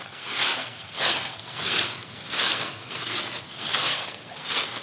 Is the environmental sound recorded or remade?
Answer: remade